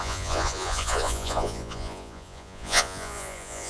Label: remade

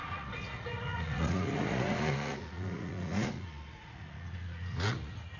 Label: remade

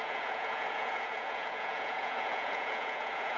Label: remade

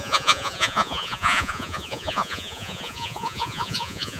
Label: remade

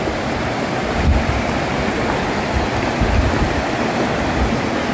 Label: recorded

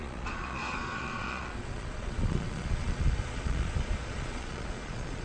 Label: remade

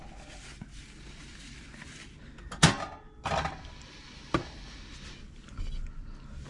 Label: recorded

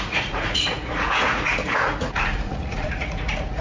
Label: remade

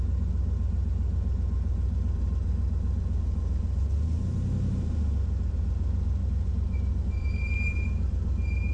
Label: recorded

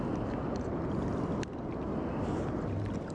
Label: recorded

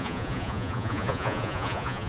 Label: remade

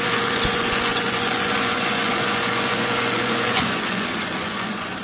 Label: remade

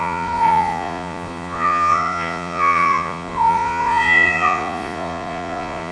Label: remade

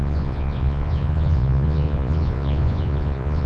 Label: remade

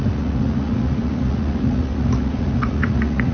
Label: remade